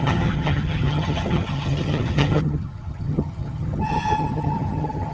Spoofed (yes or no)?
yes